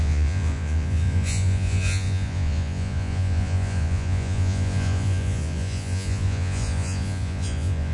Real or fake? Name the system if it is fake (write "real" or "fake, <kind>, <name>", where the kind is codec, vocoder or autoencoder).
fake, vocoder, Vocos